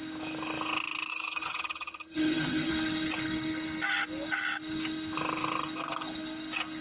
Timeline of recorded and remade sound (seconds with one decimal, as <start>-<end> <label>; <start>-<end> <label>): 0.0-1.1 recorded; 1.1-2.7 remade; 2.7-6.8 recorded